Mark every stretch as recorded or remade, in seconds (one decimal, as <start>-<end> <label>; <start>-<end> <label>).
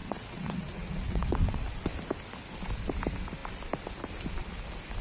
0.0-1.9 remade; 1.9-5.0 recorded